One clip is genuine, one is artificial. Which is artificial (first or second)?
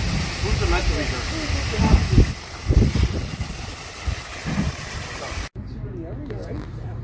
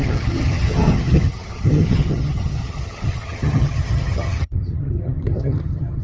second